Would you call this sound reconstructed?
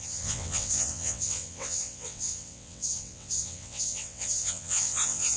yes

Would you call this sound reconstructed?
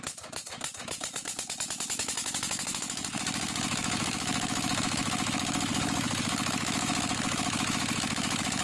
yes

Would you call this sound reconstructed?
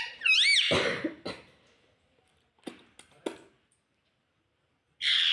no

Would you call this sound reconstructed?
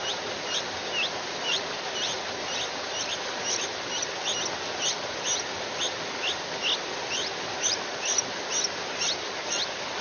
no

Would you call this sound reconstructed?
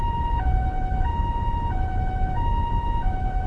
yes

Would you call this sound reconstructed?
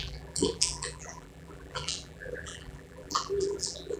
yes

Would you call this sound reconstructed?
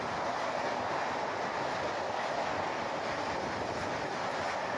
no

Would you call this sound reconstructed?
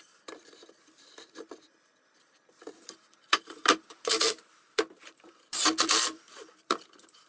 yes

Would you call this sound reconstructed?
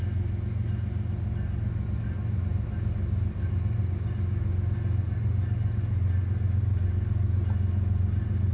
no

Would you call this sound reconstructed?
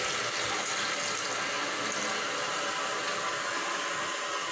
no